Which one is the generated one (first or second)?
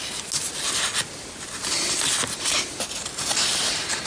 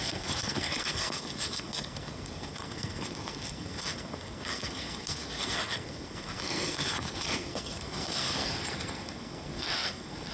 second